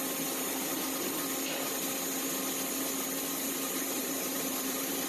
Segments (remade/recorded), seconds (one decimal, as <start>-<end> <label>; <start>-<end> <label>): 0.0-0.7 remade; 0.7-3.3 recorded; 3.3-5.1 remade